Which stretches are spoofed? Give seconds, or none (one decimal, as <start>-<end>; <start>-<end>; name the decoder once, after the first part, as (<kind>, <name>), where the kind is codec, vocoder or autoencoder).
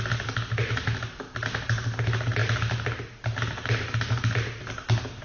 none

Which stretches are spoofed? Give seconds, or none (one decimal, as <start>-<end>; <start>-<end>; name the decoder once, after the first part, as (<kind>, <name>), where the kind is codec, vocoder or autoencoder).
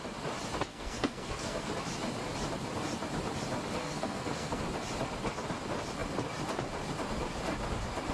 0.7-1.7 (codec, SNAC); 3.8-4.6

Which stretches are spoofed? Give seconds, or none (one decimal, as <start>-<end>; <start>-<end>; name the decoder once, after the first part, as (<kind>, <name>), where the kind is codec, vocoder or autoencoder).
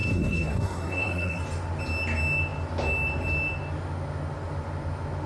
0.0-1.4 (codec, SNAC)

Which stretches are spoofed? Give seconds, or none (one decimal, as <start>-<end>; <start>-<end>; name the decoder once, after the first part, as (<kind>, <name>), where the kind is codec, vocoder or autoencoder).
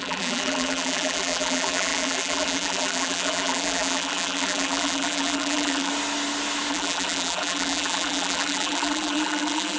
0.0-5.9 (vocoder, BigVGAN v2); 6.7-9.8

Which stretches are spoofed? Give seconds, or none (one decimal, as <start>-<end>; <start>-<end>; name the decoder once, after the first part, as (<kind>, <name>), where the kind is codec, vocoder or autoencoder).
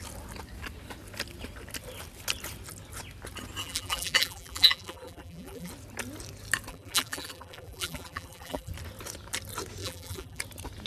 3.6-5.7 (vocoder, BigVGAN v2); 6.7-8.7; 9.8-10.4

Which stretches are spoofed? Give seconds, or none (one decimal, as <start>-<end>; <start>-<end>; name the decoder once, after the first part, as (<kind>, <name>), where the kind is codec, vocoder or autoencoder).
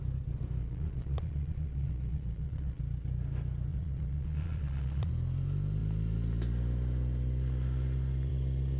0.6-2.8 (vocoder, Vocos); 3.7-5.1